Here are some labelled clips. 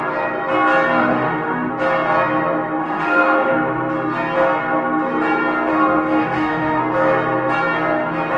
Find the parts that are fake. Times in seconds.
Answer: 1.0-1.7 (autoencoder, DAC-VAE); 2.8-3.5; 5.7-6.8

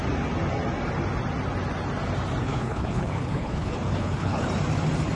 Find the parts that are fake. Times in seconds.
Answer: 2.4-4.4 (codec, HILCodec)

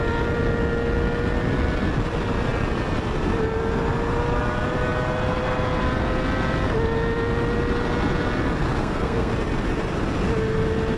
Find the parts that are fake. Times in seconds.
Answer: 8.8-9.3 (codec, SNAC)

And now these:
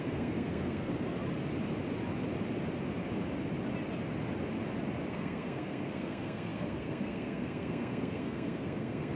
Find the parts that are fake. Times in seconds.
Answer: 0.0-0.9 (codec, SNAC); 5.1-9.2

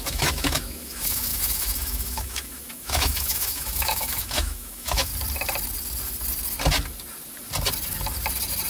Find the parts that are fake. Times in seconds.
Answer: 0.0-5.1 (autoencoder, DAC-VAE)

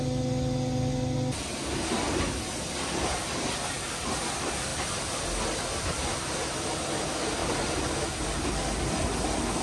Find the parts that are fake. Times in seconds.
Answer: 4.7-5.2 (vocoder, BigVGAN v2); 7.4-8.2

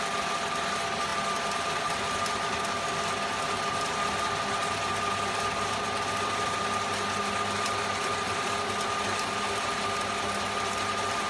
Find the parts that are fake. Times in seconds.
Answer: none

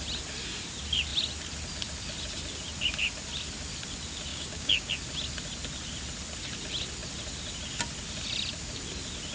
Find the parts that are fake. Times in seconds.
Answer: 4.3-4.9 (codec, DAC)